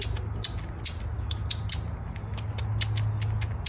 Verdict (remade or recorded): recorded